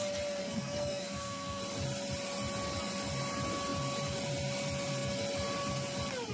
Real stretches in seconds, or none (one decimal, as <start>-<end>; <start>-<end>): 0.0-0.4; 1.6-6.3